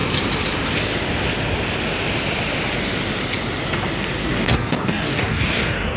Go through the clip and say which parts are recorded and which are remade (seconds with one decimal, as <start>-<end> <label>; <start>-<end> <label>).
0.0-4.2 recorded; 4.2-6.0 remade